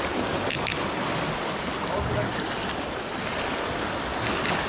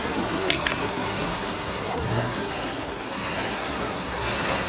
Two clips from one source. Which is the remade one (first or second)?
second